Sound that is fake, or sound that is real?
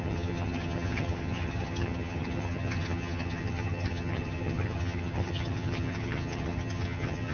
fake